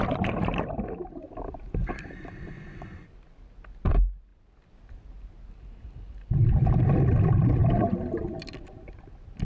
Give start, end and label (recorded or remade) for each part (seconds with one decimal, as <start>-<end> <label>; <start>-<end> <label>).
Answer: 0.0-4.3 remade; 4.3-7.0 recorded; 7.0-7.6 remade; 7.6-8.2 recorded; 8.2-9.4 remade